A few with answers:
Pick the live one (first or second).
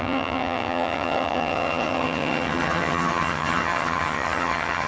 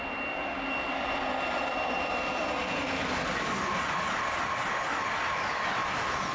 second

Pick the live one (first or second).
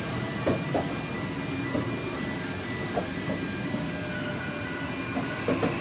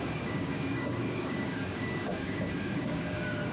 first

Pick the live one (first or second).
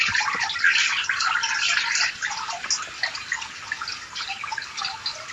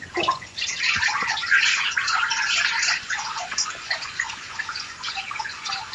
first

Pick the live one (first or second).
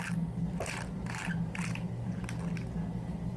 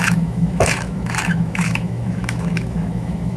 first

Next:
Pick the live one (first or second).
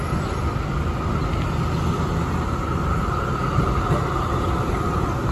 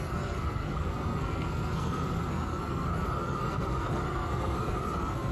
first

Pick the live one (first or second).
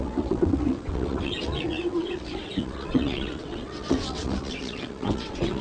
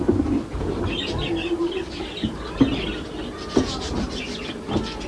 second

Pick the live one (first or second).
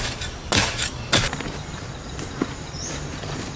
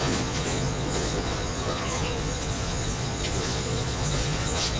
first